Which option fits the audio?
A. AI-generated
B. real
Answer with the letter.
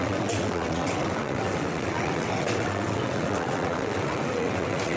A